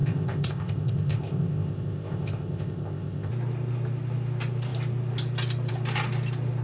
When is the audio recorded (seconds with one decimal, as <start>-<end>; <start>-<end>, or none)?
3.3-6.6